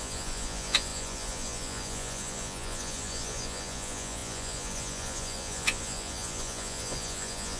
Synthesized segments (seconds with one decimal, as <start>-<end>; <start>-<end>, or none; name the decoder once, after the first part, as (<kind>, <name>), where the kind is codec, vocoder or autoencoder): 0.0-7.6 (vocoder, Vocos)